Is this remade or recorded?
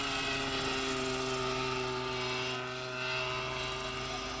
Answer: recorded